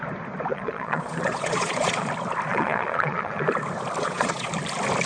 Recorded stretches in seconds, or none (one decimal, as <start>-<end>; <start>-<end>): 0.0-0.5; 2.1-2.5; 3.5-4.0; 4.5-5.1